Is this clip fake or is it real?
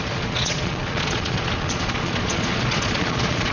fake